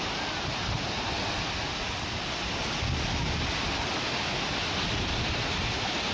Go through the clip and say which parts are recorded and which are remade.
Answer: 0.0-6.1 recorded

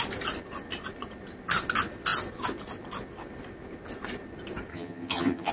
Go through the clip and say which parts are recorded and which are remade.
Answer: 0.0-4.7 recorded; 4.7-5.5 remade